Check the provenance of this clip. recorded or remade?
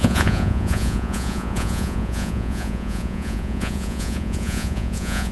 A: remade